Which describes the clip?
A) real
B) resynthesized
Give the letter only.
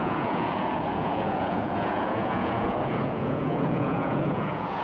B